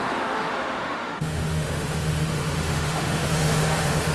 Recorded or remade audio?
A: remade